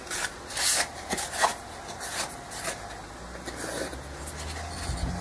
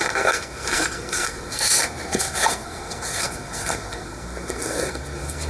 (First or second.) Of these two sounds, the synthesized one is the second